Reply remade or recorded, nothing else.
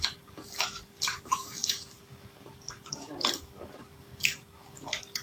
remade